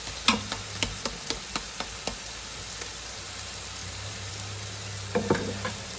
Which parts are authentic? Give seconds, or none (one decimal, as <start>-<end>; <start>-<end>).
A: 0.0-3.8; 4.3-6.0